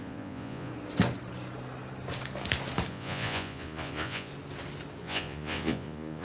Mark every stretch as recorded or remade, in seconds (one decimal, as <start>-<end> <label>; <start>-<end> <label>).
0.0-0.7 remade; 0.7-2.9 recorded; 2.9-4.3 remade; 4.3-5.0 recorded; 5.0-6.2 remade